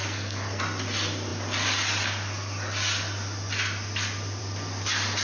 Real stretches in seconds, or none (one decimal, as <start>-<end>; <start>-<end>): 0.6-5.2